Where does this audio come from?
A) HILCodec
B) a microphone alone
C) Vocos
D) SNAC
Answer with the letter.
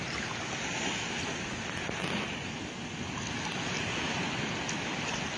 B